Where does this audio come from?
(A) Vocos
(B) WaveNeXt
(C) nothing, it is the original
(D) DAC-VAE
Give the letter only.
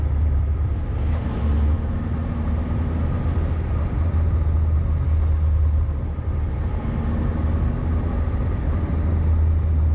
C